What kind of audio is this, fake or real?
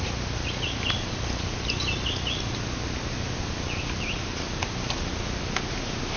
real